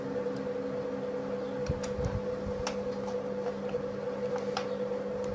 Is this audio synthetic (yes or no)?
no